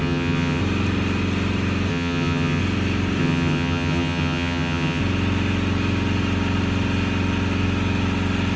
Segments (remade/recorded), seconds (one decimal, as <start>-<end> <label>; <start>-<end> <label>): 0.0-0.6 remade; 0.6-1.9 recorded; 1.9-2.6 remade; 2.6-3.2 recorded; 3.2-5.0 remade; 5.0-8.6 recorded